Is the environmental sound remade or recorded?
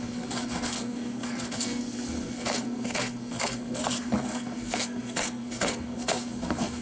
remade